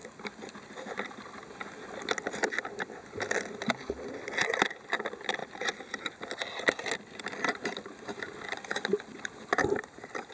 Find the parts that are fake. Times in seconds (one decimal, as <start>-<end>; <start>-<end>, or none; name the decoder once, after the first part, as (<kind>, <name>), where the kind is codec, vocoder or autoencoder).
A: none